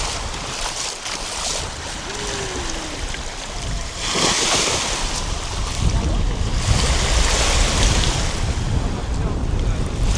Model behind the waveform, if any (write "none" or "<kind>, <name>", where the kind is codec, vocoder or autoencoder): none